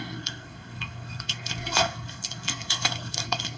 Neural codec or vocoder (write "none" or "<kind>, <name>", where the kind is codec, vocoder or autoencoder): codec, SNAC